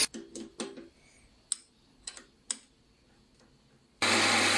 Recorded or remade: recorded